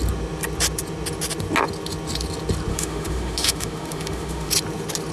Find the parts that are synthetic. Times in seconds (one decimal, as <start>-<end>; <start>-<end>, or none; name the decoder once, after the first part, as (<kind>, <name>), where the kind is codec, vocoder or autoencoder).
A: 2.7-4.5 (autoencoder, DAC-VAE)